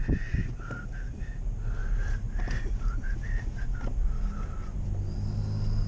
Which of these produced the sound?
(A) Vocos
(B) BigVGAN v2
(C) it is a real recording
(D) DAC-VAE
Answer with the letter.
C